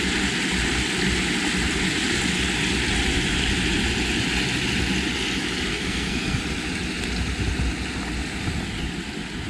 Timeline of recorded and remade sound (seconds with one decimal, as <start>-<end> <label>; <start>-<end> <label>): 0.0-5.7 recorded; 5.7-6.4 remade; 6.4-9.5 recorded